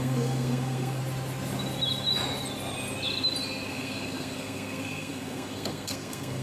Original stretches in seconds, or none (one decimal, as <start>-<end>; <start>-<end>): 1.0-3.7

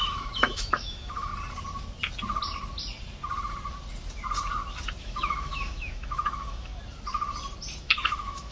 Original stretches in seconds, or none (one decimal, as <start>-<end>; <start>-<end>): 1.3-5.0; 6.7-7.8